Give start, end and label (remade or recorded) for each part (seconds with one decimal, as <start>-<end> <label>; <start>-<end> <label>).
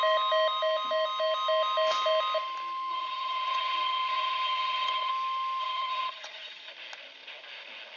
0.0-2.9 recorded; 2.9-5.1 remade; 5.1-5.6 recorded; 5.6-6.7 remade; 6.7-8.0 recorded